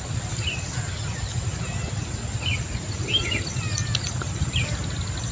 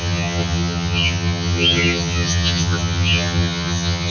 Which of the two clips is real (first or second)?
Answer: first